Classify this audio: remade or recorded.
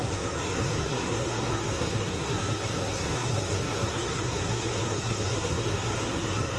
remade